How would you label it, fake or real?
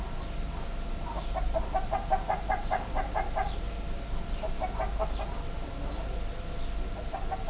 real